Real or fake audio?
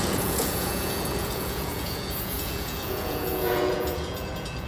fake